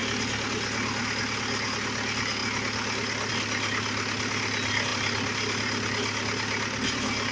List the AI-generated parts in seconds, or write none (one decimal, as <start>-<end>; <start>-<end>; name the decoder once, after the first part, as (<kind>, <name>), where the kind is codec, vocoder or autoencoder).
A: none

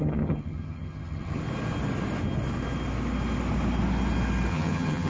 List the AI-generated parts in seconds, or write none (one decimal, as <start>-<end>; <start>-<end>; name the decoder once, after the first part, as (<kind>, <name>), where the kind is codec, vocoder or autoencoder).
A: 0.0-1.4 (vocoder, HiFi-GAN); 4.5-5.1

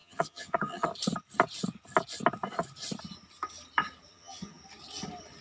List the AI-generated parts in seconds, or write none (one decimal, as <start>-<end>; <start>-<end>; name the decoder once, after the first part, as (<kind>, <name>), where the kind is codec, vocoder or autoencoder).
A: 0.0-0.9 (vocoder, HiFi-GAN); 4.1-4.6

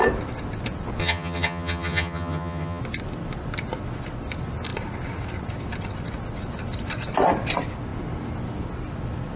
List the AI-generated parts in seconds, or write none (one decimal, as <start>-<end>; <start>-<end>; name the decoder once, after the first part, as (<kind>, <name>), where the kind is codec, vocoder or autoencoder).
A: 1.0-2.8 (vocoder, HiFi-GAN)